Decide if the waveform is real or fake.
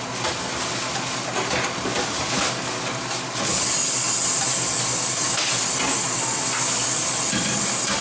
real